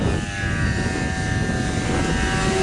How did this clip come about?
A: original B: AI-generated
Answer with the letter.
A